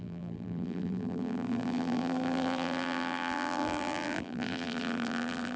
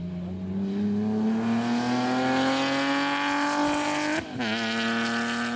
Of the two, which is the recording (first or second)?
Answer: second